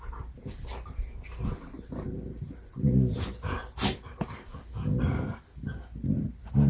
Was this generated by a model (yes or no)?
no